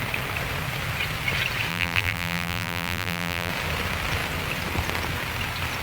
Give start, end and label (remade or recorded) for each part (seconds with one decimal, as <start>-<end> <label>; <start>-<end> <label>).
0.0-1.7 recorded; 1.7-3.5 remade; 3.5-5.8 recorded